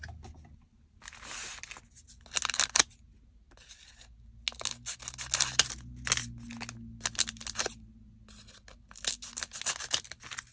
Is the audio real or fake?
real